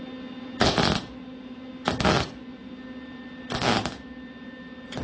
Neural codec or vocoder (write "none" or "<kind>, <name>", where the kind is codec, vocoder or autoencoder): none